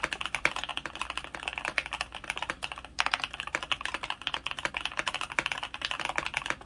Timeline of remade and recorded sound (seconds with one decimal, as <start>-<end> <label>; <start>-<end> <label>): 0.0-6.7 recorded

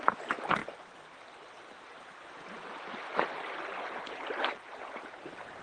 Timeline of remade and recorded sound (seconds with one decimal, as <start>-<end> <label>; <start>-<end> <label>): 0.0-5.6 recorded

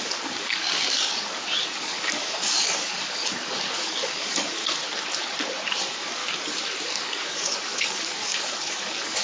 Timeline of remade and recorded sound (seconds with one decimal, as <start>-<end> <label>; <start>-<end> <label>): 0.0-4.6 remade; 4.6-5.8 recorded; 5.8-6.2 remade; 6.2-6.8 recorded; 6.8-9.2 remade

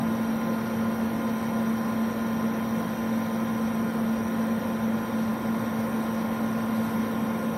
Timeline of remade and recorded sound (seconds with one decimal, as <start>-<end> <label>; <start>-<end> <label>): 0.0-7.6 recorded